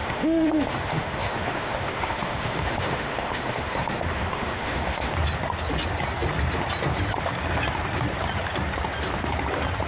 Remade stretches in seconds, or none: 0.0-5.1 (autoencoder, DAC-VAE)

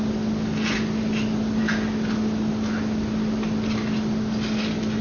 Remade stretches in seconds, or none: none

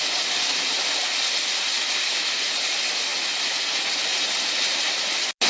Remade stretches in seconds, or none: none

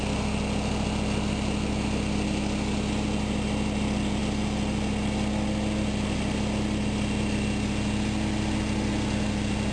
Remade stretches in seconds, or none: none

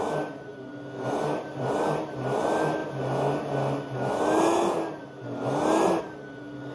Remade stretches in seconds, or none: none

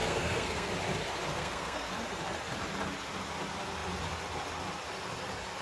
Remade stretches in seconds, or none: 0.0-0.7 (codec, SNAC); 1.3-1.9